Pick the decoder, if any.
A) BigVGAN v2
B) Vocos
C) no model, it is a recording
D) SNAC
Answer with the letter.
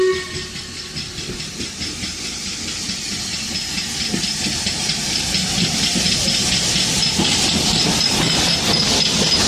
C